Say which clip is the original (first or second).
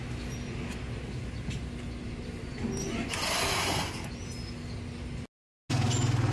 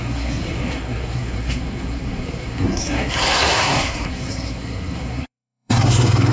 first